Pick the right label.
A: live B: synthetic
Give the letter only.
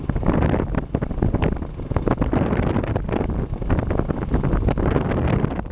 A